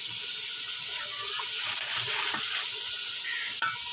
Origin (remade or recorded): recorded